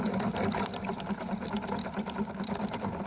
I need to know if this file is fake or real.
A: real